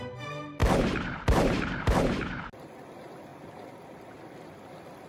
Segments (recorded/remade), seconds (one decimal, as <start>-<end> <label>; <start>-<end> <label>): 0.0-0.6 recorded; 0.6-2.4 remade; 2.4-5.1 recorded